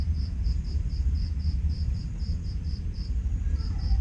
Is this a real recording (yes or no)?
no